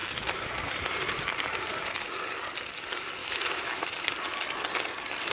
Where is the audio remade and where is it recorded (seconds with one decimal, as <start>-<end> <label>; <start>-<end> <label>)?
0.0-3.2 recorded; 3.2-3.8 remade; 3.8-5.3 recorded